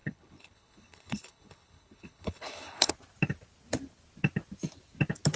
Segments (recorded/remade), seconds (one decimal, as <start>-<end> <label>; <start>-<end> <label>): 0.0-2.9 remade; 2.9-5.4 recorded